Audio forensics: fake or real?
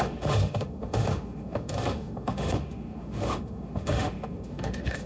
fake